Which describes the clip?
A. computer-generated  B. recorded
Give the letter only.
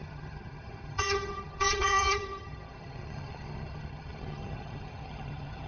A